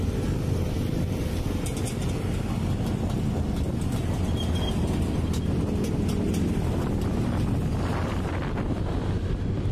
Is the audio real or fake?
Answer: real